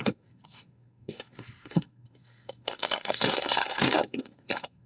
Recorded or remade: remade